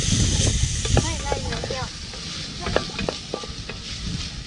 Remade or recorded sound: recorded